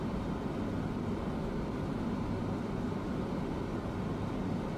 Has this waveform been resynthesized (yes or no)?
no